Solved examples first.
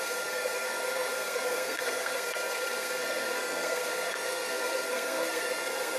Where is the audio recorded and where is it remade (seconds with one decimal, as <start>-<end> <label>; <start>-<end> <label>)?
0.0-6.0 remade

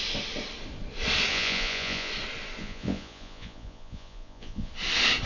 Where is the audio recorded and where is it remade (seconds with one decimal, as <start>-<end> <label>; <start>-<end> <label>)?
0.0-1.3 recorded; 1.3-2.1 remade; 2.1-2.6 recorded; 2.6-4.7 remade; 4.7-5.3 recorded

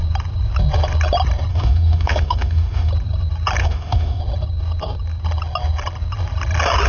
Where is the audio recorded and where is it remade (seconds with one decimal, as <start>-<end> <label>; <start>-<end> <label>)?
0.0-1.5 recorded; 1.5-2.9 remade; 2.9-3.6 recorded; 3.6-4.2 remade; 4.2-6.9 recorded

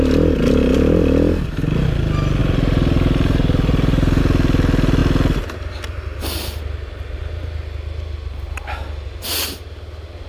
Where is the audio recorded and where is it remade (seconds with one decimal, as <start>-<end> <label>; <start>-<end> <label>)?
0.0-2.4 recorded; 2.4-4.2 remade; 4.2-10.3 recorded

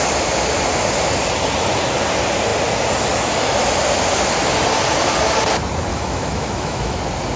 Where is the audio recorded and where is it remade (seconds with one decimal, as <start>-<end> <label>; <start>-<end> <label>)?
0.0-5.9 recorded; 5.9-7.0 remade; 7.0-7.4 recorded